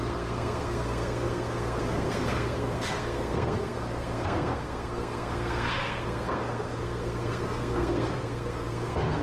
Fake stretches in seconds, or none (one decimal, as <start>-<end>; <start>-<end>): 0.0-9.2